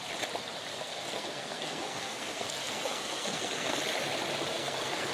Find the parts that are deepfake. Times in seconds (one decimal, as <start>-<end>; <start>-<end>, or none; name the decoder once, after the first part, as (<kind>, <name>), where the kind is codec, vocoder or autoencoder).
0.7-3.8 (codec, SNAC); 4.5-5.1